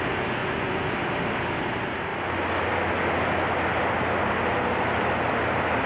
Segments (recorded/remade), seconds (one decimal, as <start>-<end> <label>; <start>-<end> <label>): 0.0-0.4 recorded; 0.4-0.9 remade; 0.9-5.9 recorded